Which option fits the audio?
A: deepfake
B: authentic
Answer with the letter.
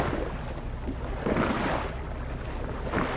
B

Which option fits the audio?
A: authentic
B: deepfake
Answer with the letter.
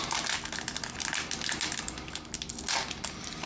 A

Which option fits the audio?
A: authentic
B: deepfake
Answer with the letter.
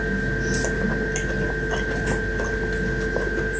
A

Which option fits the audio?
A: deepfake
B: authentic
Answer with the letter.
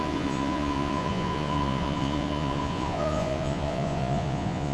A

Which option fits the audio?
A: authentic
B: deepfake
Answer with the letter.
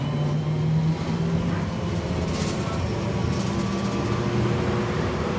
A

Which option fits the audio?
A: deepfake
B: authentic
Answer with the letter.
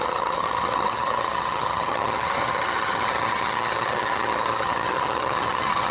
A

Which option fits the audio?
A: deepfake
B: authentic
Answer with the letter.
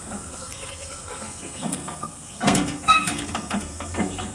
A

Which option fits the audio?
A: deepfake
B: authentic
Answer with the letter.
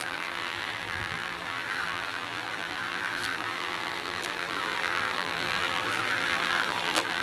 A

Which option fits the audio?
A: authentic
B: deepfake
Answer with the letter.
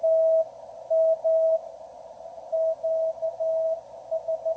A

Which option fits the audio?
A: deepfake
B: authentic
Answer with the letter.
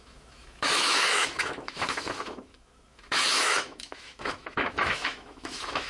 A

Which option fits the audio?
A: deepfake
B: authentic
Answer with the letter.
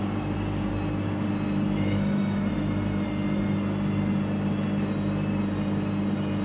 B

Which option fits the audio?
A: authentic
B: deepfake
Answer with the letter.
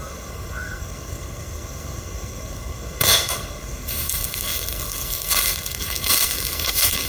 B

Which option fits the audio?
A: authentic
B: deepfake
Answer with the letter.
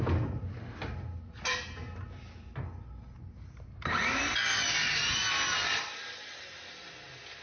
A